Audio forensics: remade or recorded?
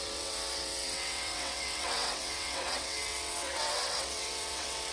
remade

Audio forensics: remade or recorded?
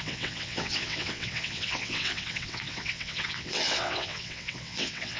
remade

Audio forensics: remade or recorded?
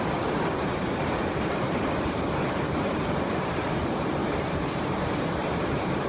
remade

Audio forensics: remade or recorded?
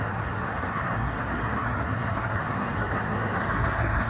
remade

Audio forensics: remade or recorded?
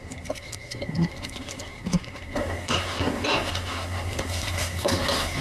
remade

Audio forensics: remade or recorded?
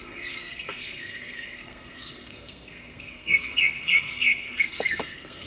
remade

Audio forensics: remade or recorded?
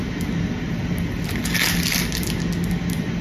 recorded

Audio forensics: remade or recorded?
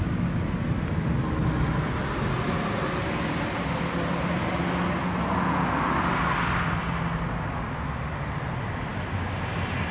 recorded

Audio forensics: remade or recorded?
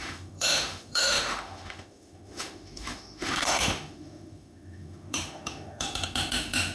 remade